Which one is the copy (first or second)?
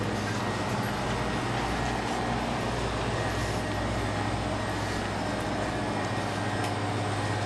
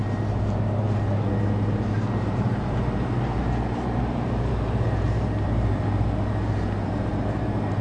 second